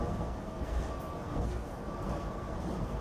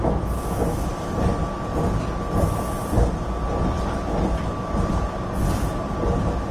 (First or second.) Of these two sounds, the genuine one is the second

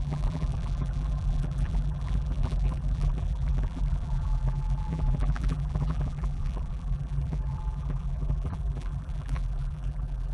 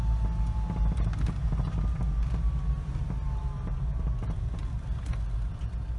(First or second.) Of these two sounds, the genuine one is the second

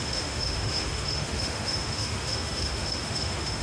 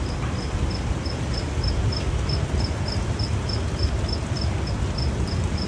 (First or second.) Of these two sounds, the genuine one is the second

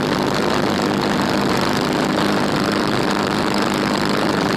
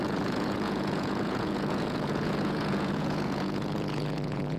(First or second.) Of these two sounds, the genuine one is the first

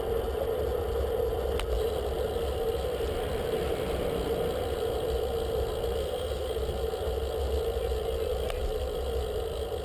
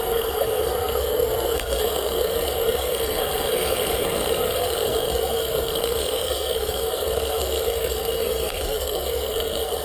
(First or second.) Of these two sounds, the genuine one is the first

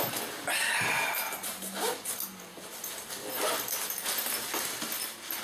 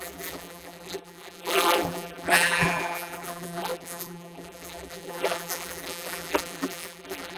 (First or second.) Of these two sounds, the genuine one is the first